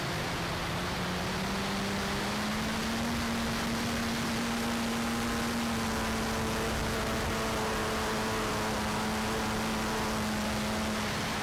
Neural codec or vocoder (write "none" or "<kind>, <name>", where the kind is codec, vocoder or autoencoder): none